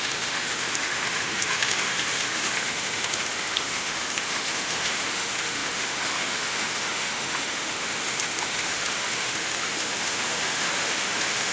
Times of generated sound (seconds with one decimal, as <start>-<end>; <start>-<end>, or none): 0.0-11.5